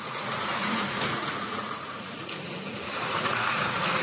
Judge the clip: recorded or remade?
remade